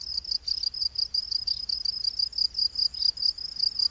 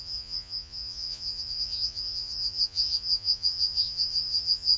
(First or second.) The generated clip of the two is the second